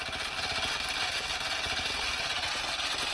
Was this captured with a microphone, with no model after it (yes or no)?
yes